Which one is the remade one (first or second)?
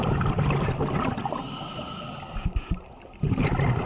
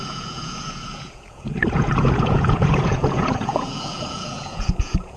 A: second